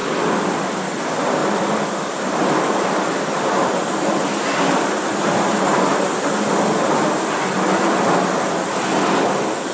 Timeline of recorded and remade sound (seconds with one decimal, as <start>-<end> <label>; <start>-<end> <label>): 0.0-9.7 recorded

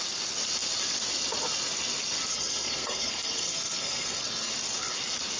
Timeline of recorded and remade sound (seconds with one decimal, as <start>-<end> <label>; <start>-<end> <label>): 0.0-2.3 recorded; 2.3-4.5 remade; 4.5-5.4 recorded

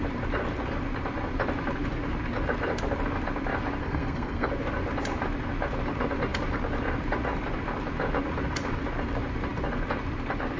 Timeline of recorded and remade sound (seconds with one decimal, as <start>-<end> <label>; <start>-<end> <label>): 0.0-3.8 recorded; 3.8-4.5 remade; 4.5-10.6 recorded

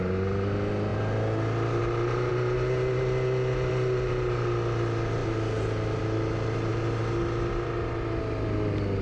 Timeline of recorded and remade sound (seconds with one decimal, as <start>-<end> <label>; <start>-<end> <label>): 0.0-9.0 recorded

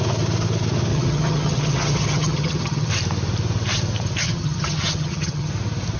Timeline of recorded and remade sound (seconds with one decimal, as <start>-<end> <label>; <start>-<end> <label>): 0.0-0.9 recorded; 0.9-2.9 remade; 2.9-4.2 recorded; 4.2-5.5 remade; 5.5-6.0 recorded

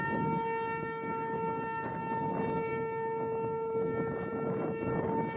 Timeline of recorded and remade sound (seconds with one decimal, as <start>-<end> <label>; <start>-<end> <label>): 0.0-5.4 recorded

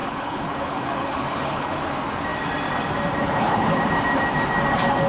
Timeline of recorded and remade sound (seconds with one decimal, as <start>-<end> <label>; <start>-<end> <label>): 0.0-1.8 remade; 1.8-3.2 recorded; 3.2-3.8 remade; 3.8-5.1 recorded

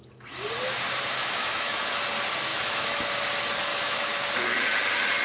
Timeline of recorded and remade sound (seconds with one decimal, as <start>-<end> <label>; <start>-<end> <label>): 0.0-1.2 recorded; 1.2-1.8 remade; 1.8-2.5 recorded; 2.5-3.0 remade; 3.0-3.7 recorded; 3.7-4.2 remade; 4.2-5.2 recorded